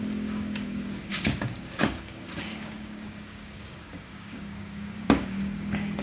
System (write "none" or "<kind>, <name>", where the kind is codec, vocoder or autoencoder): codec, DAC